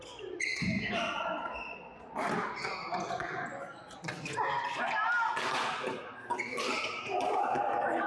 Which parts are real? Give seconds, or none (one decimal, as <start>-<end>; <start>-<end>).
0.0-8.1